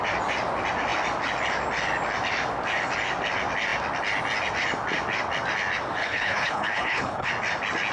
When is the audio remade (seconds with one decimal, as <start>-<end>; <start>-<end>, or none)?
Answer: 6.0-7.3